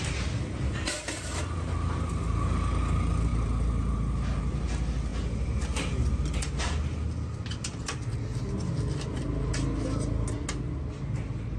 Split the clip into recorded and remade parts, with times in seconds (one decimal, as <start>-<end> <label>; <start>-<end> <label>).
0.0-11.6 recorded